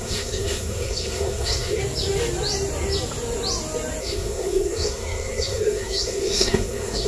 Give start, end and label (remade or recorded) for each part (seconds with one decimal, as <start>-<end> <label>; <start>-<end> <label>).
0.0-1.8 remade; 1.8-4.0 recorded; 4.0-7.1 remade